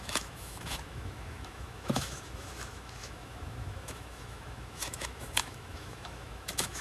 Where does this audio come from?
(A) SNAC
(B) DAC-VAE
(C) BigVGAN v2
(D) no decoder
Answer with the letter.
B